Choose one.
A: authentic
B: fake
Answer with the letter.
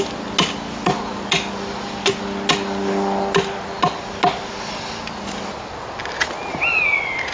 A